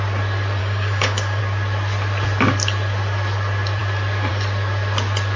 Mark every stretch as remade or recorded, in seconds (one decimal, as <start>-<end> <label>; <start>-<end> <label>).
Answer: 0.0-0.6 recorded; 0.6-1.4 remade; 1.4-5.4 recorded